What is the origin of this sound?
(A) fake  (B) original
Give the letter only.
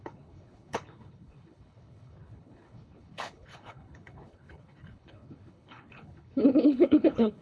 A